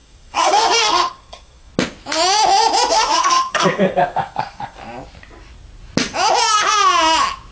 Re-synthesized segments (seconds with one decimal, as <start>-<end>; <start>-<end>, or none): 0.0-1.7; 2.9-4.8